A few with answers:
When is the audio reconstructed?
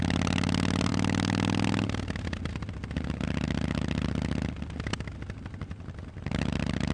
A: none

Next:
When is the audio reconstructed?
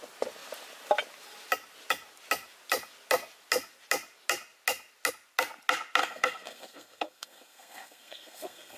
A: 6.0-8.8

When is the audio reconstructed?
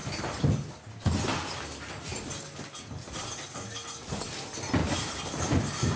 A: none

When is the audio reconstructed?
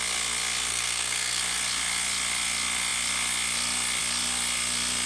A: 0.7-1.4